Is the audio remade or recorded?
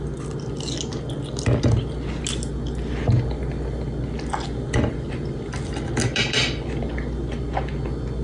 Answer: recorded